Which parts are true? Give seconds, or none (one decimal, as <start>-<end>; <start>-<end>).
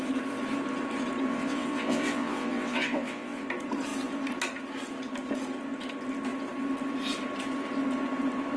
0.0-1.3; 3.4-8.6